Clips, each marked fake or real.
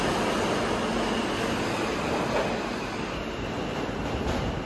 real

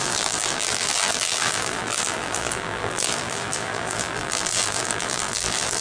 fake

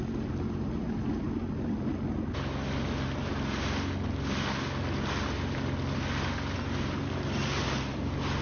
real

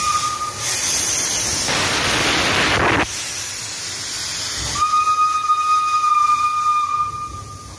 real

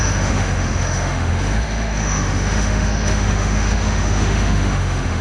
fake